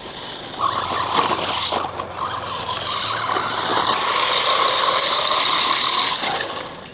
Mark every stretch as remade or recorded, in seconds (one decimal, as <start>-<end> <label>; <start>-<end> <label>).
0.0-3.7 recorded; 3.7-6.1 remade; 6.1-6.9 recorded